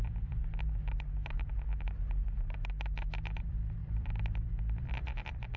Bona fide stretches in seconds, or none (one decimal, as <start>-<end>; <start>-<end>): 0.4-3.4